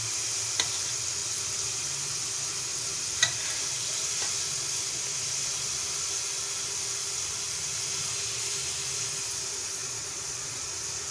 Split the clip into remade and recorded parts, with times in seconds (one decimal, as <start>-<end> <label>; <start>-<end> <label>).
0.0-9.6 recorded; 9.6-10.7 remade; 10.7-11.1 recorded